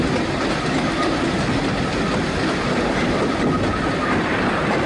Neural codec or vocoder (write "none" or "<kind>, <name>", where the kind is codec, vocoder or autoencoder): none